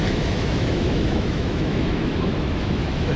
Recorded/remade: remade